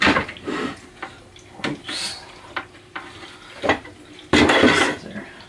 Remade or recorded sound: recorded